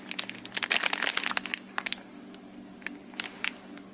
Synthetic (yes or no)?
no